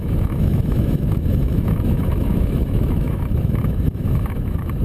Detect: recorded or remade remade